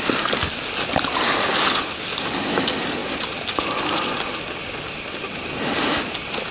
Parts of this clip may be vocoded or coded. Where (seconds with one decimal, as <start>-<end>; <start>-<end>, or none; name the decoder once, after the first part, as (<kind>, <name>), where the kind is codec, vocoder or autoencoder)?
none